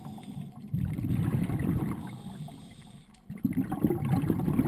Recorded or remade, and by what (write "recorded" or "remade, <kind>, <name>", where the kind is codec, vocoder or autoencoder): remade, vocoder, BigVGAN v2